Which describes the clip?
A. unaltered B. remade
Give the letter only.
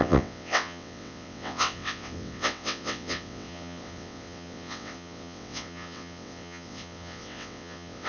B